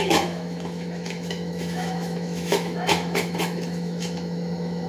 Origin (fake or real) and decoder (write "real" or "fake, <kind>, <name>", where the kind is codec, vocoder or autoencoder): fake, autoencoder, DAC-VAE